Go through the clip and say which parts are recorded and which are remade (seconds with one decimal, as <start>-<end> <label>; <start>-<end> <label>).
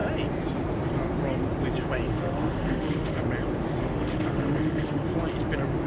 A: 0.0-2.1 recorded; 2.1-3.2 remade; 3.2-3.8 recorded; 3.8-5.0 remade; 5.0-5.9 recorded